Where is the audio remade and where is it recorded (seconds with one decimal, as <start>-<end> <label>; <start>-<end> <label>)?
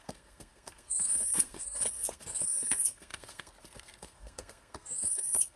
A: 0.0-5.6 remade